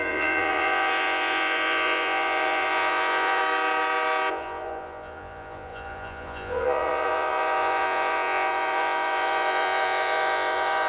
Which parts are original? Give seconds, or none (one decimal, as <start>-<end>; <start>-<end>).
3.4-4.3